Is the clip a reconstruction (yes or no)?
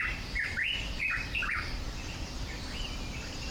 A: yes